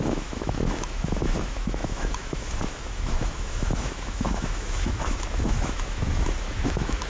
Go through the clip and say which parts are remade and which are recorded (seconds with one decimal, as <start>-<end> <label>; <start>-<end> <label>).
0.0-7.1 remade